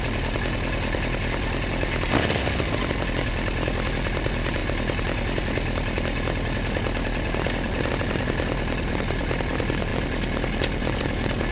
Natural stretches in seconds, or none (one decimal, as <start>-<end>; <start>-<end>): 0.0-11.5